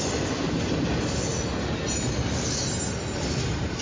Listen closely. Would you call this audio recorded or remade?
recorded